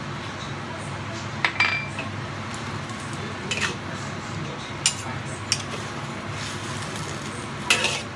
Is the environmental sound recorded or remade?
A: recorded